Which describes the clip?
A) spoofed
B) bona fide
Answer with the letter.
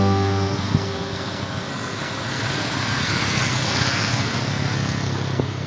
A